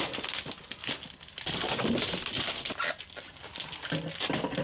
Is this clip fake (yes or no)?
no